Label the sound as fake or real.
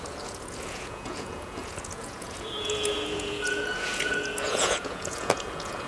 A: fake